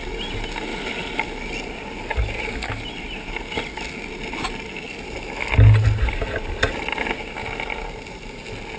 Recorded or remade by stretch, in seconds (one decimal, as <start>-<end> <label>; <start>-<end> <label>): 0.0-8.8 recorded